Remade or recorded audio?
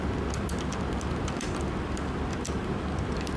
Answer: recorded